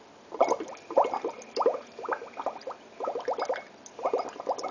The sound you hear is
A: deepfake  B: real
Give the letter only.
A